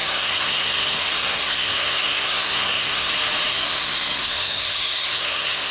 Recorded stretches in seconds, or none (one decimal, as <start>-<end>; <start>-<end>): 3.1-3.5